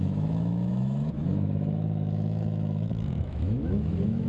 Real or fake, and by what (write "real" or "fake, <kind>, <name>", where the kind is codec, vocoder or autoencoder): fake, autoencoder, DAC-VAE